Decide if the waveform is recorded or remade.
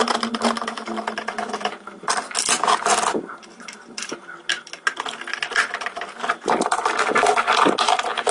recorded